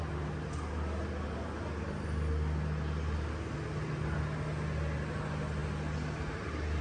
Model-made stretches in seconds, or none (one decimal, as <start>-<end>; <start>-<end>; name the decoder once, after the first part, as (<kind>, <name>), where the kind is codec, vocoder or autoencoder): none